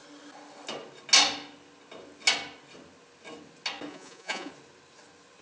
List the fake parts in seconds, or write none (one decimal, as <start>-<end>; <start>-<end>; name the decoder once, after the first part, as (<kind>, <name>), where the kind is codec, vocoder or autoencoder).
3.9-4.5 (vocoder, Vocos)